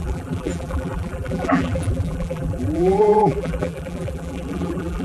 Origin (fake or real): fake